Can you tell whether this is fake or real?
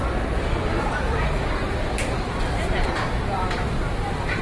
fake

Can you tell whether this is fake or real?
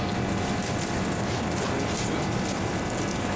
real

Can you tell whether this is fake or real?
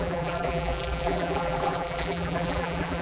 fake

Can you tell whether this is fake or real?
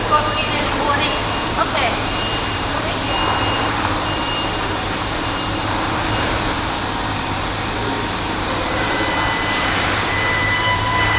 fake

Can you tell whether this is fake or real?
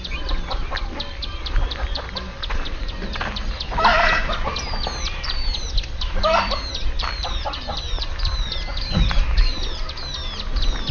fake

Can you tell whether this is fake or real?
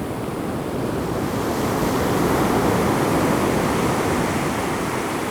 real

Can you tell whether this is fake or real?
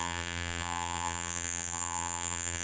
fake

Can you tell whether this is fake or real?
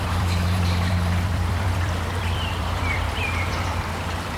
fake